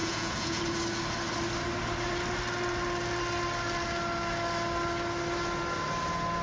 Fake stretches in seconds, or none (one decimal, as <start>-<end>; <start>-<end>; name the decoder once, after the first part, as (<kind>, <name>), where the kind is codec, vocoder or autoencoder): 0.0-0.6 (vocoder, Vocos)

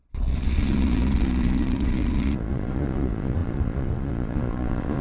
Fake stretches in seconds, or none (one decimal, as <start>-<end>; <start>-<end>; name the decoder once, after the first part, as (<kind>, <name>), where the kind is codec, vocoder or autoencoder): 0.0-5.0 (vocoder, Vocos)

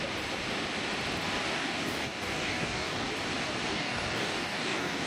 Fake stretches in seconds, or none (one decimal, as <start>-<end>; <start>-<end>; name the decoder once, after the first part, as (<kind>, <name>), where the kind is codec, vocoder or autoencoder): 1.5-3.1 (codec, DAC); 3.7-5.1

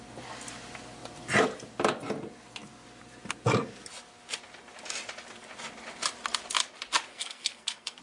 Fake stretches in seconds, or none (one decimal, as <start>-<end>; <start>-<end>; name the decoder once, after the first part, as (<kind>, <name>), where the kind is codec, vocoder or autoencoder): 7.1-8.0 (codec, SNAC)

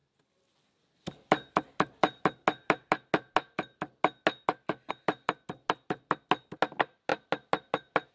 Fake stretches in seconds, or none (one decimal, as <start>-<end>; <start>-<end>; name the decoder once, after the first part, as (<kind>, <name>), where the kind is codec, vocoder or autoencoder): none